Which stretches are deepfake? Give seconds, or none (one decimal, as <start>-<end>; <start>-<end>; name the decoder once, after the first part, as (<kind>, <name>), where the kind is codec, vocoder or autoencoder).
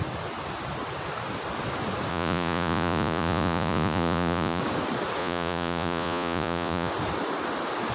2.1-4.6 (vocoder, Vocos); 5.2-6.9